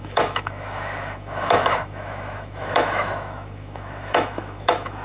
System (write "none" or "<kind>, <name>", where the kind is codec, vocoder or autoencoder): autoencoder, DAC-VAE